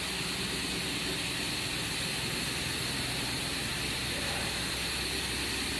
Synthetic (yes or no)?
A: no